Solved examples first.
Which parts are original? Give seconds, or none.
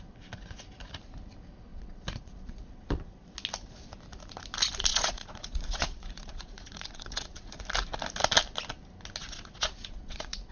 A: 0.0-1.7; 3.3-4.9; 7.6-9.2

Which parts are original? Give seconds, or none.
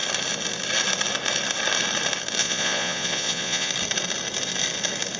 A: 0.0-2.4; 3.7-5.2